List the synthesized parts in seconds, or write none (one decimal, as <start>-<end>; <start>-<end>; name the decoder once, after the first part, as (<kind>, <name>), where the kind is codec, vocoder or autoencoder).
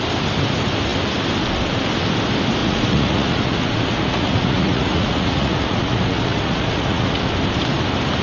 2.6-7.3 (vocoder, Vocos)